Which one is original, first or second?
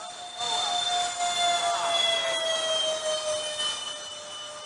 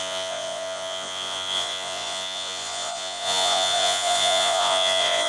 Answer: first